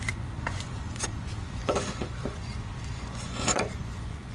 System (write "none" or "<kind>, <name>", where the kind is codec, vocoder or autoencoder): vocoder, Vocos